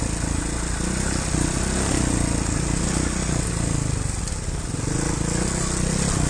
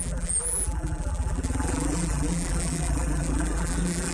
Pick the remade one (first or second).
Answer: second